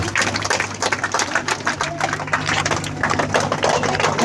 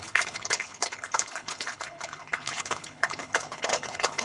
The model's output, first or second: second